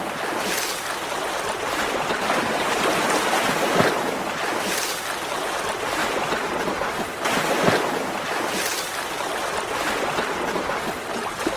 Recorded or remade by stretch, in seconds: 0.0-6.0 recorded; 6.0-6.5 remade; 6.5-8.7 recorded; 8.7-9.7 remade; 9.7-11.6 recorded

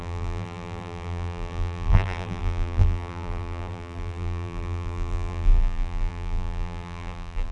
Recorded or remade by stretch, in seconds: 0.0-7.5 remade